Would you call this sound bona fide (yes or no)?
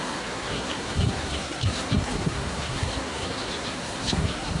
no